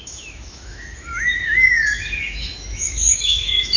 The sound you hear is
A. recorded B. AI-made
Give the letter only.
B